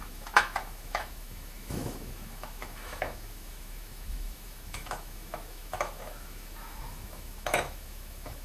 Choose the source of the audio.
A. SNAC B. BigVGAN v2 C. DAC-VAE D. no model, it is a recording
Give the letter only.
C